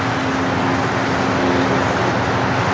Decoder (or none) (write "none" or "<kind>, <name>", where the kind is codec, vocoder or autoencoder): none